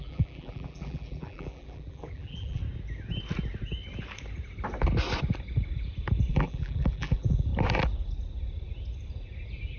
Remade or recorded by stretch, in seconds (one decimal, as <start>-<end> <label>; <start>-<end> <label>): 0.0-2.6 remade; 2.6-6.3 recorded; 6.3-7.5 remade; 7.5-9.8 recorded